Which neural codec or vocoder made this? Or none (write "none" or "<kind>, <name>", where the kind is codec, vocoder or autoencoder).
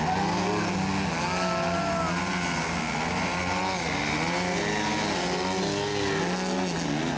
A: none